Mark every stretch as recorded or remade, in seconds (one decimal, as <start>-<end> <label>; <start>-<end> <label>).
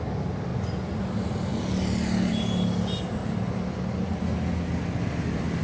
0.0-5.6 recorded